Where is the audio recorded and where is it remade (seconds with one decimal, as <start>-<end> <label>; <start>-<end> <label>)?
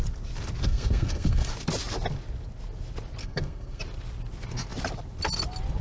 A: 0.0-0.6 recorded; 0.6-1.5 remade; 1.5-3.2 recorded; 3.2-3.8 remade; 3.8-5.8 recorded